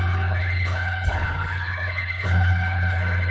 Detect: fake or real fake